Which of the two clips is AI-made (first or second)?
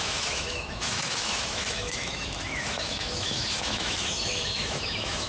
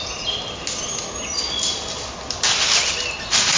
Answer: first